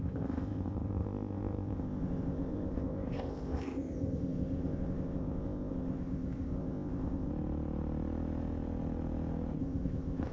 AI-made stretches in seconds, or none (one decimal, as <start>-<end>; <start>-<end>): 0.0-7.3; 9.6-10.3